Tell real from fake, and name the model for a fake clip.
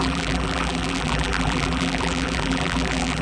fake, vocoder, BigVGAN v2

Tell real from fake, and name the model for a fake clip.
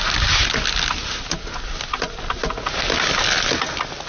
real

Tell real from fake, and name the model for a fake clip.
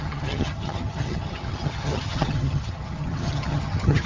fake, vocoder, HiFi-GAN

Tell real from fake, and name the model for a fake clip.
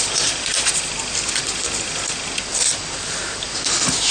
real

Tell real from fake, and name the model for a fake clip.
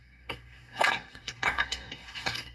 fake, codec, SNAC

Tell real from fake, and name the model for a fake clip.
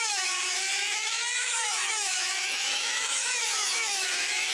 fake, autoencoder, DAC-VAE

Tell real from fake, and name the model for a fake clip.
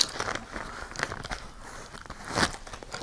real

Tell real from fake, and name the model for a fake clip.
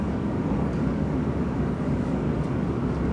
fake, codec, DAC